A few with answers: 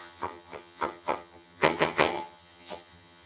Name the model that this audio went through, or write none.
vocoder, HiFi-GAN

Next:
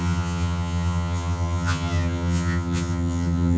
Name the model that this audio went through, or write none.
vocoder, HiFi-GAN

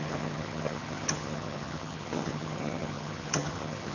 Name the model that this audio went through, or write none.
vocoder, HiFi-GAN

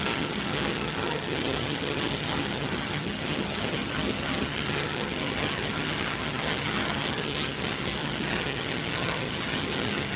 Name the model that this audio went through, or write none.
vocoder, HiFi-GAN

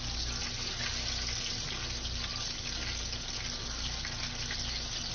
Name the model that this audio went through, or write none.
none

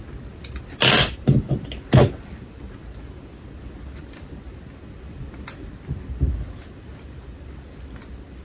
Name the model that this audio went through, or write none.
none